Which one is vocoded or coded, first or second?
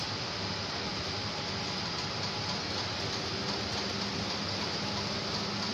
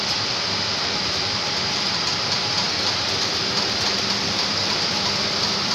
second